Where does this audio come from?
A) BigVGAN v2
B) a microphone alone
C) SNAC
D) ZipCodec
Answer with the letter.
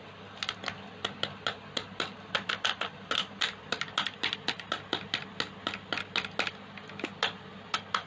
B